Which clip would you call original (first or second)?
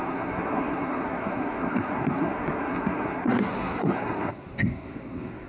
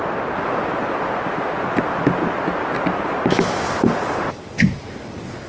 second